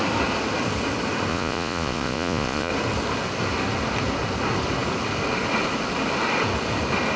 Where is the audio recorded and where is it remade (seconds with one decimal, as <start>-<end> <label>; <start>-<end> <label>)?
0.0-1.3 recorded; 1.3-2.7 remade; 2.7-7.2 recorded